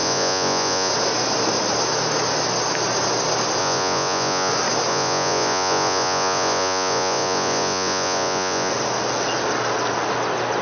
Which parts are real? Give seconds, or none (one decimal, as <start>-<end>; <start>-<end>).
0.9-3.6; 4.5-4.9; 8.7-10.6